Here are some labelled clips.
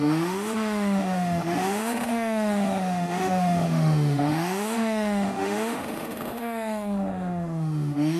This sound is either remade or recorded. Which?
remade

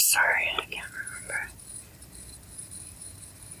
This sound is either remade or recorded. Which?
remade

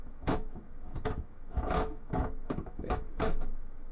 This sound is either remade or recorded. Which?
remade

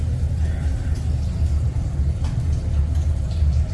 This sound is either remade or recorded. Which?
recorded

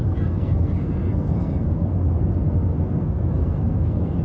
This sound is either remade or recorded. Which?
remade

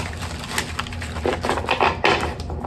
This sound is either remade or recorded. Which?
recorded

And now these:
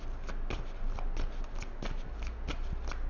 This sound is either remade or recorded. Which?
recorded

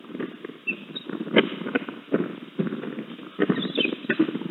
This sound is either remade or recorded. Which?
recorded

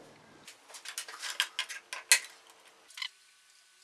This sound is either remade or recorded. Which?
recorded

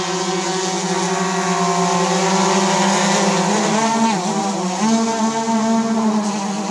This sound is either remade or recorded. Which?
recorded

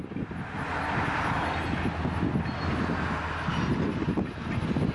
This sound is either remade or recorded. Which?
recorded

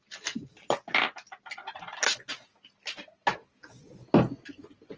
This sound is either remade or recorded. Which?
recorded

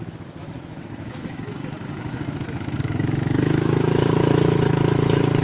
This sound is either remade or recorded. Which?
remade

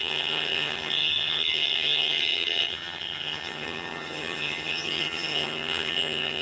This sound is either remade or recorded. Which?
remade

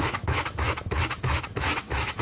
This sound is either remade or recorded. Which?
remade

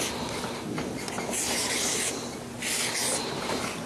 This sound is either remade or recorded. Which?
recorded